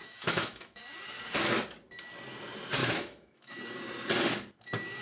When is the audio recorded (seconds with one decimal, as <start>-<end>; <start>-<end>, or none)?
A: 0.8-2.8; 3.6-5.0